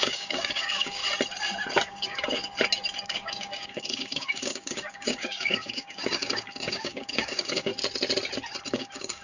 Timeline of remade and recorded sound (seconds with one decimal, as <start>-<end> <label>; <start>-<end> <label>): 0.0-1.0 remade; 1.0-1.9 recorded; 1.9-2.4 remade; 2.4-3.0 recorded; 3.0-7.7 remade; 7.7-8.7 recorded; 8.7-9.2 remade